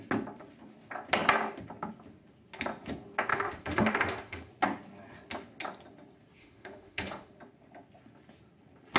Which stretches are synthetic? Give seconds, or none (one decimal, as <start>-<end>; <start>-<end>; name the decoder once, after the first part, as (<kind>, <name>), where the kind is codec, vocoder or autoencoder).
3.3-4.5 (autoencoder, DAC-VAE); 6.4-7.3